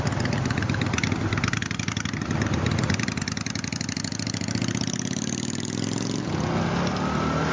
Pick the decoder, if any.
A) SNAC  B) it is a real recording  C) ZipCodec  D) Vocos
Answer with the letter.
B